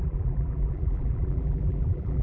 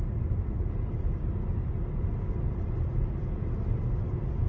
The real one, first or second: second